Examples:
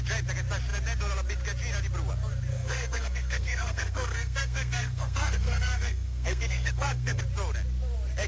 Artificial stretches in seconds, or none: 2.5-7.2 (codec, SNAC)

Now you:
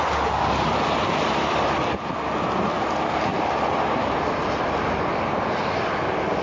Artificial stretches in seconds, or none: none

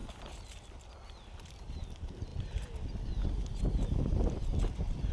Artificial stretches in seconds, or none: none

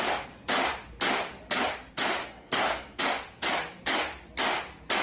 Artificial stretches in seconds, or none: 2.2-3.0 (codec, SNAC)

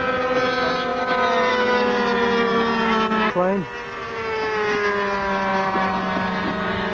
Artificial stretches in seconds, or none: none

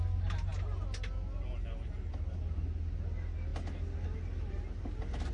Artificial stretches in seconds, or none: none

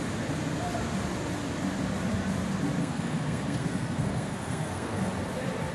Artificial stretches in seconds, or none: 2.8-5.1 (codec, SNAC)